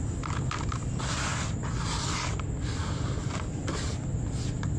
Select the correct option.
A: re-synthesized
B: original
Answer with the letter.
B